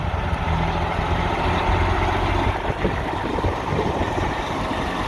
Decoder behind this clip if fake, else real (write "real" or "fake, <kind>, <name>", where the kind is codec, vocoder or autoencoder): real